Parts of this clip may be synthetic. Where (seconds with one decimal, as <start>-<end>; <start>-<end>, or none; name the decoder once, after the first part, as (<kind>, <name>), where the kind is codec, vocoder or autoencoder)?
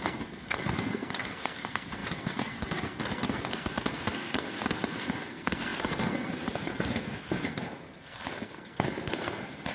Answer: 0.0-9.7 (codec, SNAC)